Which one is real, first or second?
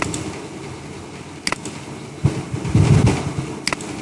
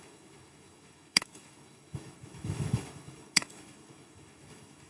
first